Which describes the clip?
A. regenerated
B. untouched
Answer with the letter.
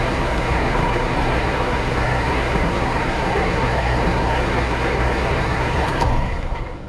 A